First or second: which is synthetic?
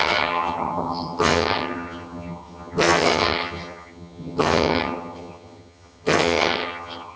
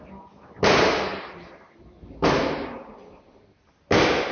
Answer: first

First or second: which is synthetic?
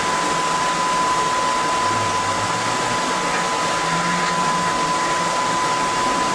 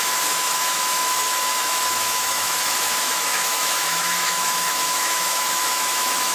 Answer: second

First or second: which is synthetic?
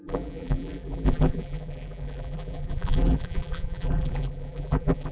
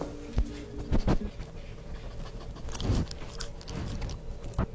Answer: first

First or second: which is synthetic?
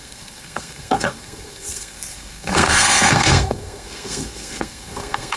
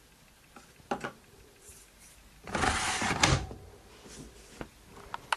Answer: first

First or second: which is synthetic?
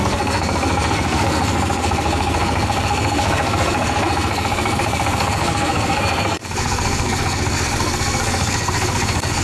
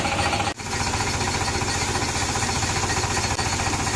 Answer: first